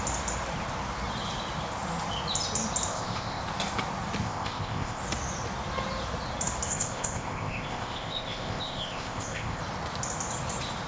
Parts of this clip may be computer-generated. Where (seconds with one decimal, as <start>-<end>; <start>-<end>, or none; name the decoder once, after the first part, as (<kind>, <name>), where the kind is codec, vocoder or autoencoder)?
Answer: 2.9-3.4 (codec, ZipCodec); 4.2-5.0; 6.7-9.6